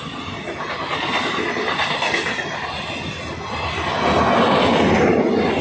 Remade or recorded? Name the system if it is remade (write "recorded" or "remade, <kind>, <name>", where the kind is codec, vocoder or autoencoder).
recorded